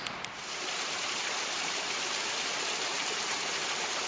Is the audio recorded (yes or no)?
no